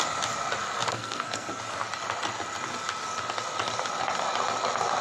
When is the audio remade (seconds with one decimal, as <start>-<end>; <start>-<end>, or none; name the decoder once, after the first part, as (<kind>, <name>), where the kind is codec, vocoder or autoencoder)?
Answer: 0.9-1.6 (codec, SNAC)